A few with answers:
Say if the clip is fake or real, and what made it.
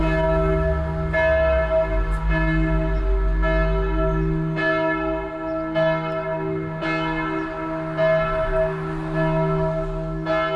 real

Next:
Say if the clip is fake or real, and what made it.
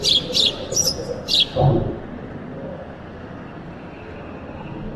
real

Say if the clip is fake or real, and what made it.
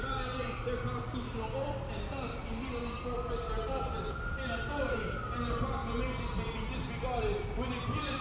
real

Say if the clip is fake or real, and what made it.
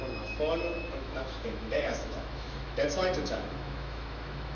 fake, autoencoder, DAC-VAE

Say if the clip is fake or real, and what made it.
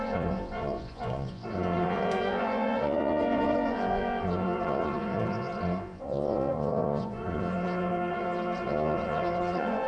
fake, vocoder, Vocos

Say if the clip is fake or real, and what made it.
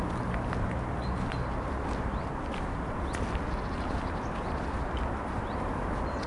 real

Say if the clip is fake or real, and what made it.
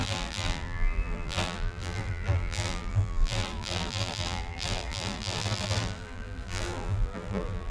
fake, vocoder, BigVGAN v2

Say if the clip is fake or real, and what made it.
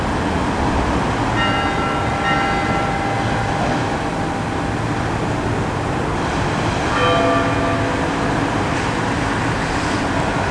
real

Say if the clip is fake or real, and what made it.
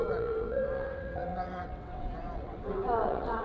fake, vocoder, WaveNeXt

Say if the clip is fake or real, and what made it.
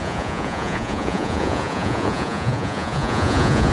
fake, vocoder, Vocos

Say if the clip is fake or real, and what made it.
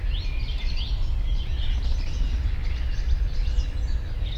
real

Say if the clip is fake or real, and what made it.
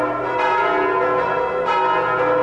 real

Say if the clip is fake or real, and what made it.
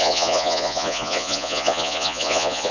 fake, vocoder, Vocos